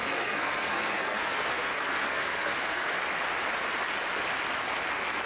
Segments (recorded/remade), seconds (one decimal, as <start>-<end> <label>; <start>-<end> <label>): 0.0-2.9 remade; 2.9-5.3 recorded